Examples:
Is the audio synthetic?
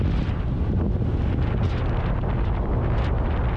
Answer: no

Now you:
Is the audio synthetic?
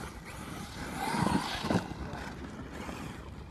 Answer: no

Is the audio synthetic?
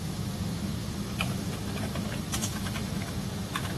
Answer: yes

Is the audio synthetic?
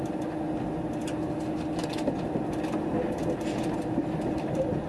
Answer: no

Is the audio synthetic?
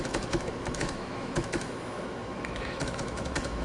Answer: yes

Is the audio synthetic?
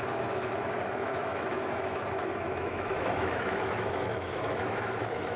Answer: yes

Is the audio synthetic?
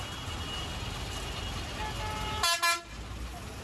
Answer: no